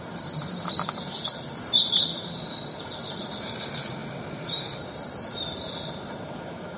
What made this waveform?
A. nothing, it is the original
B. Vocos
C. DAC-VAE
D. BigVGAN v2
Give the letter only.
D